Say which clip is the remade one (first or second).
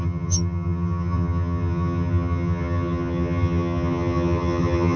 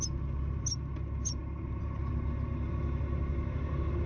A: first